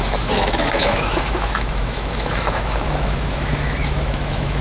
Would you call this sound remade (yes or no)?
yes